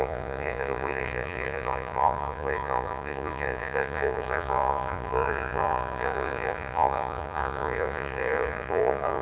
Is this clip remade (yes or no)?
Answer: yes